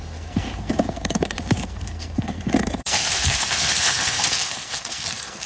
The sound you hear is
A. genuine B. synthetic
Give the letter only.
B